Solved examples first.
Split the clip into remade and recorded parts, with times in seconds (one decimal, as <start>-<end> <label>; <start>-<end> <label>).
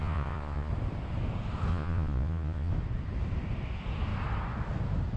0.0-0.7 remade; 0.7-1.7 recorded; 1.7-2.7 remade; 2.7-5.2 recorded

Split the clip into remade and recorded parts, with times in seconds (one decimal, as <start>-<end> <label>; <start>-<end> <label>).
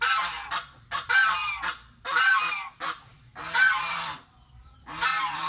0.0-5.5 recorded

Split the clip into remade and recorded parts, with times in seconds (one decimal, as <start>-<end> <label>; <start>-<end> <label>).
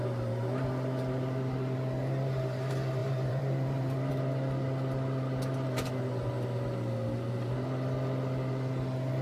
0.0-3.0 recorded; 3.0-4.1 remade; 4.1-9.2 recorded